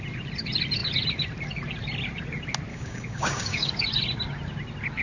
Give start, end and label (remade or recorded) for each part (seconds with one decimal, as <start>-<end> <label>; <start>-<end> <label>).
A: 0.0-2.7 recorded; 2.7-3.7 remade; 3.7-5.0 recorded